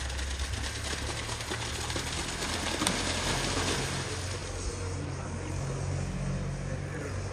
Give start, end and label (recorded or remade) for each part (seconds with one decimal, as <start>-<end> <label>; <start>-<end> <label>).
0.0-7.3 recorded